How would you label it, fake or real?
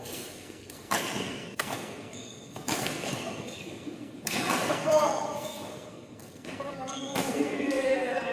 fake